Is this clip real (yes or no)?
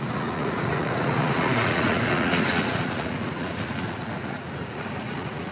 no